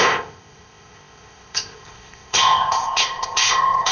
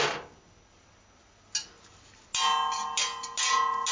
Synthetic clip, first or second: first